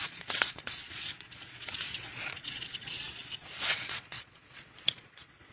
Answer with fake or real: fake